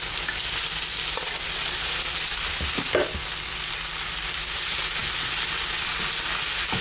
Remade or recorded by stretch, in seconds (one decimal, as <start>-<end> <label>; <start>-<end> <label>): 0.0-6.8 recorded